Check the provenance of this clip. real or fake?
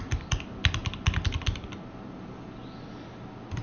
real